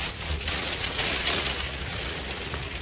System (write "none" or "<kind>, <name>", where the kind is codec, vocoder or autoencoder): vocoder, Vocos